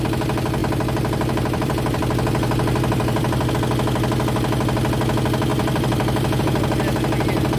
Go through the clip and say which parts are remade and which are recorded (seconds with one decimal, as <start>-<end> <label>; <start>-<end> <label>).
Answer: 0.0-0.6 recorded; 0.6-3.5 remade; 3.5-5.5 recorded; 5.5-6.4 remade; 6.4-7.6 recorded